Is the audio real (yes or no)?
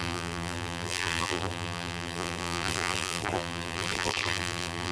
no